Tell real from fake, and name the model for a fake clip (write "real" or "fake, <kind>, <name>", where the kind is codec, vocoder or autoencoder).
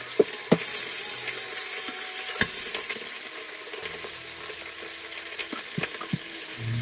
real